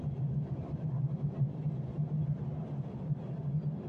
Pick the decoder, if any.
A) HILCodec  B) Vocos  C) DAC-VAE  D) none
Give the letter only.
D